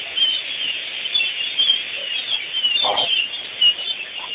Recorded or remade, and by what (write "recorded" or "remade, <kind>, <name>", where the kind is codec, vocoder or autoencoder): recorded